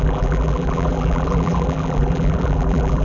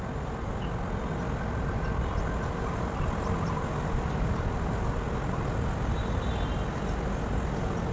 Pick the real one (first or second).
second